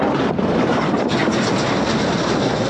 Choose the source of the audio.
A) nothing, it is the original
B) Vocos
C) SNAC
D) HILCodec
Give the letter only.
A